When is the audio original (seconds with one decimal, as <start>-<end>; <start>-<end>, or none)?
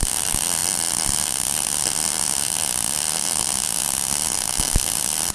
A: 0.0-5.3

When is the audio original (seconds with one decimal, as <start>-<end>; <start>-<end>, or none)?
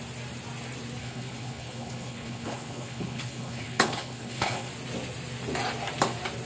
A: 0.0-1.0; 4.7-6.5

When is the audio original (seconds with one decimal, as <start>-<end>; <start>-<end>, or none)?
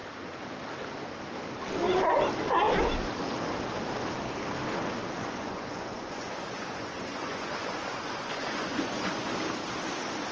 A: 0.0-5.2; 9.3-10.3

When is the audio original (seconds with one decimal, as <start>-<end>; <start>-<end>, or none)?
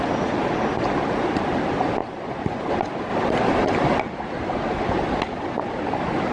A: 0.0-2.0; 2.7-3.1; 4.0-6.3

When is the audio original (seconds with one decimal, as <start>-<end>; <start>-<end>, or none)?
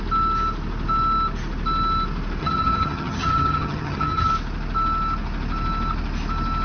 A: 0.0-2.4; 4.3-6.6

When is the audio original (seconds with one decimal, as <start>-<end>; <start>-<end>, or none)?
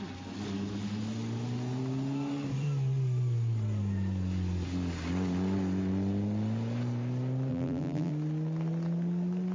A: 0.0-7.5; 8.1-9.5